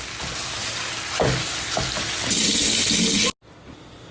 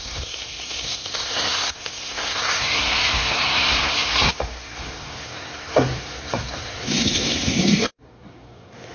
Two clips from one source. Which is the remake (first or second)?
second